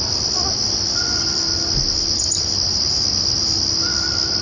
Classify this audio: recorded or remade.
recorded